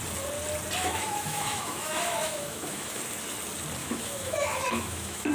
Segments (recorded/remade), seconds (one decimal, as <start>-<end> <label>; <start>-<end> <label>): 0.0-0.8 recorded; 0.8-3.0 remade; 3.0-3.8 recorded; 3.8-5.3 remade